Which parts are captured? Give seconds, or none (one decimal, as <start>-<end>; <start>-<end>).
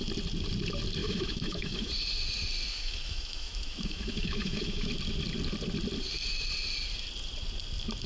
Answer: 0.0-1.0; 1.9-2.7; 4.9-8.1